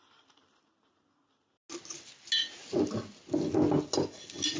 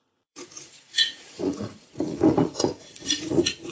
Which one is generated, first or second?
second